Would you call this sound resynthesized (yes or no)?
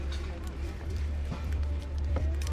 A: yes